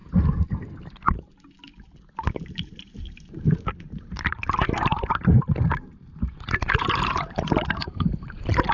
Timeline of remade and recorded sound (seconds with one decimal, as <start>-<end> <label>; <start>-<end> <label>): 0.0-2.3 recorded; 2.3-8.7 remade